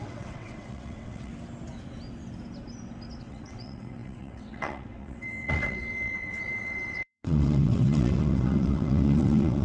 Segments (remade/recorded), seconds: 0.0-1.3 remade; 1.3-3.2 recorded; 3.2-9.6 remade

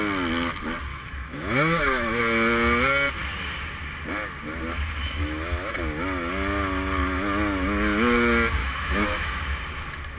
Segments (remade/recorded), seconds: 0.0-0.9 recorded; 0.9-2.2 remade; 2.2-5.0 recorded; 5.0-5.8 remade; 5.8-8.6 recorded; 8.6-9.4 remade; 9.4-10.2 recorded

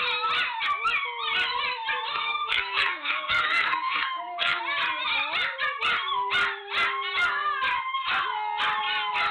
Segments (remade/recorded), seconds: 0.0-2.1 recorded; 2.1-4.6 remade; 4.6-9.3 recorded